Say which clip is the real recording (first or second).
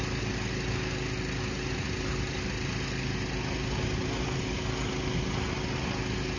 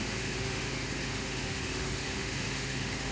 first